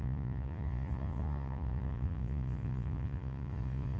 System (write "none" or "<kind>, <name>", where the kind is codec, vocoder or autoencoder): vocoder, Vocos